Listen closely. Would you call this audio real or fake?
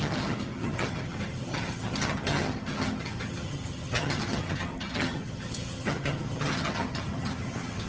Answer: fake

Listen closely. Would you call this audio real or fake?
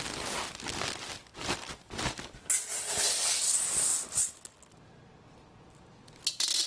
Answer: real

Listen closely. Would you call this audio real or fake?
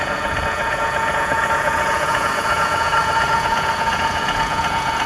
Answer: fake